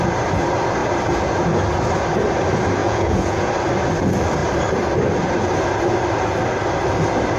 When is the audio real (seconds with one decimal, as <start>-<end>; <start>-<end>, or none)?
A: 0.0-2.8; 3.5-7.4